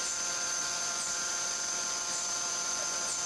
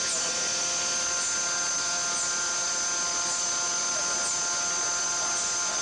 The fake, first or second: first